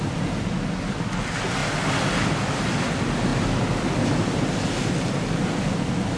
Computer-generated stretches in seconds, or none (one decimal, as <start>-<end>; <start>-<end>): none